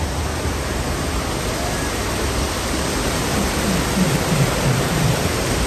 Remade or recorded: recorded